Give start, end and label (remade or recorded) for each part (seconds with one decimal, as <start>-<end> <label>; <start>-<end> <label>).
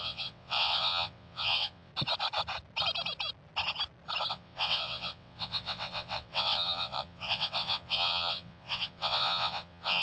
0.0-1.9 remade; 1.9-4.3 recorded; 4.3-10.0 remade